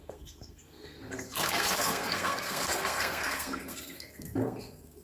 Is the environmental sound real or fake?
fake